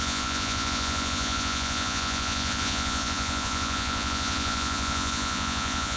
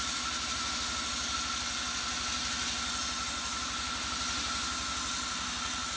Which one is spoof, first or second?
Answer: first